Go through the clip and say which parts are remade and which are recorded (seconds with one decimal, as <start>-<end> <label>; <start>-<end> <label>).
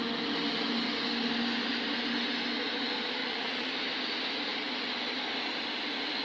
0.0-3.2 recorded; 3.2-3.7 remade; 3.7-6.2 recorded